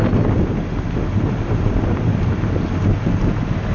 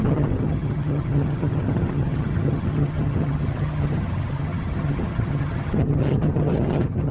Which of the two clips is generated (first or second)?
second